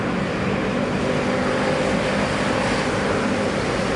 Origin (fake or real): fake